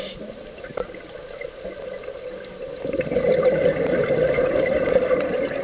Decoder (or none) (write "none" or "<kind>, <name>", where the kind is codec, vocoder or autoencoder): none